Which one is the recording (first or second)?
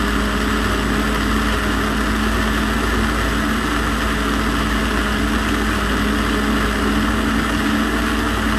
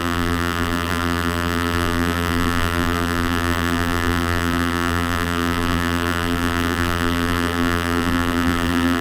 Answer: first